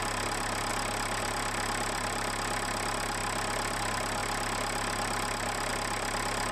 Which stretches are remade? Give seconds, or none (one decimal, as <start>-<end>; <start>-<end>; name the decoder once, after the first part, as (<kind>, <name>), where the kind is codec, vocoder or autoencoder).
none